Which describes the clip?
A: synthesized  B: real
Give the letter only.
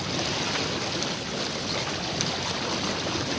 B